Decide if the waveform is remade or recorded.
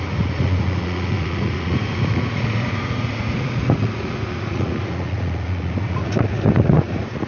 remade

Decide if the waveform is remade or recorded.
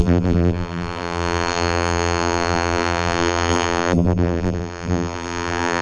remade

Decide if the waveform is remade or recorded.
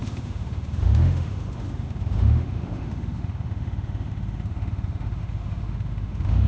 remade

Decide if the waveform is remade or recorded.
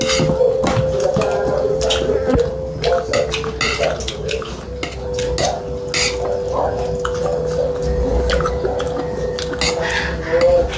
recorded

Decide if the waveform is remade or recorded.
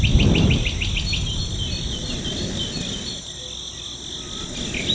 recorded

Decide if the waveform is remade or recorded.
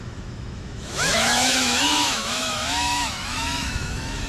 remade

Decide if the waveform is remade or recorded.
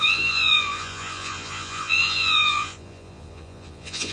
remade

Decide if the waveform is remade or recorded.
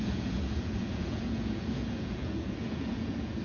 remade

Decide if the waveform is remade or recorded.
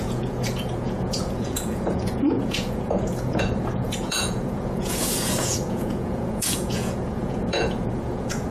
remade